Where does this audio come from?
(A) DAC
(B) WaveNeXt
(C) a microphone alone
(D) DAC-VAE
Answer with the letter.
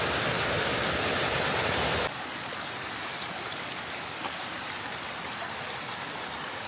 C